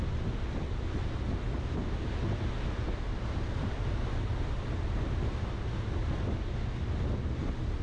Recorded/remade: recorded